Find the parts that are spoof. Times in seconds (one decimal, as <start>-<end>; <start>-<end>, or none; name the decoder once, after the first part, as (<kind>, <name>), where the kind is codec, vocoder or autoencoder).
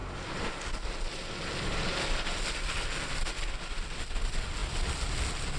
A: none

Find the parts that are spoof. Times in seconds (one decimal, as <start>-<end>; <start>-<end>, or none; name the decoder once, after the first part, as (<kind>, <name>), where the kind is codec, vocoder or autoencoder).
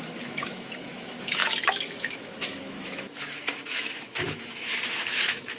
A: 0.0-5.6 (autoencoder, DAC-VAE)